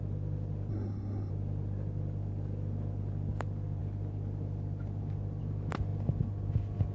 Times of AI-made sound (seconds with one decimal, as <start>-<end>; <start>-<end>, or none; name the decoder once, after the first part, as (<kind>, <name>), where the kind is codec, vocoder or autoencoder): 0.7-1.3 (codec, SNAC)